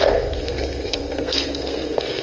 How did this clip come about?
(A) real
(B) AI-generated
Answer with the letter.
B